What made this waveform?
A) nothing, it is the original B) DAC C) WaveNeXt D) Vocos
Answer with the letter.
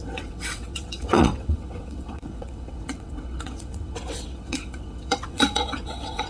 C